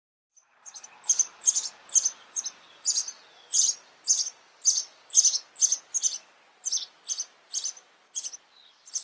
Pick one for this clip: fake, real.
real